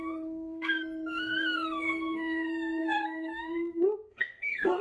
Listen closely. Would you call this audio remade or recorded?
remade